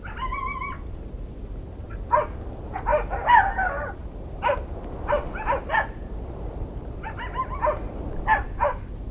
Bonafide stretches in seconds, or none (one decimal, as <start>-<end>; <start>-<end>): 0.0-9.1